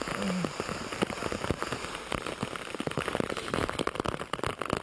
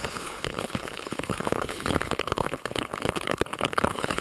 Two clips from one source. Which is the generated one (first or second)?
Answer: second